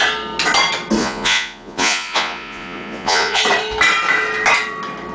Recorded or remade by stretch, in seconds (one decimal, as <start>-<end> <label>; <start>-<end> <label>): 0.0-1.0 recorded; 1.0-3.4 remade; 3.4-5.1 recorded